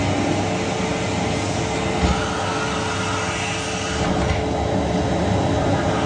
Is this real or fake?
real